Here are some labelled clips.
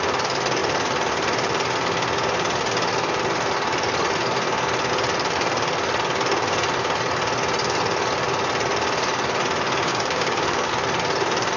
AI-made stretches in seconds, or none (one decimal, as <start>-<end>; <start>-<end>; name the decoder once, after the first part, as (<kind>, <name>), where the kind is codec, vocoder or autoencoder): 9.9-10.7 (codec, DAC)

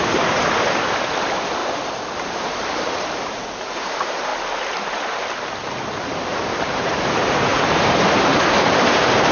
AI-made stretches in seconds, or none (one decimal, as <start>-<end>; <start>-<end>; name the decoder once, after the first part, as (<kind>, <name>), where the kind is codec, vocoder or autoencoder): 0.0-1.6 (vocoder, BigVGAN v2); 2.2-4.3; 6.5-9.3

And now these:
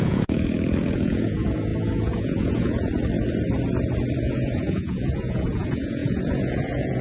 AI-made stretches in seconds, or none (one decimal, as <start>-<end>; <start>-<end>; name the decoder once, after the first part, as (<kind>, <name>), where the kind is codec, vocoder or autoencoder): 0.0-2.9 (vocoder, Vocos); 4.2-7.0